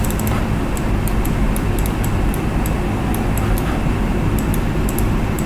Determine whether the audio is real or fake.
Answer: real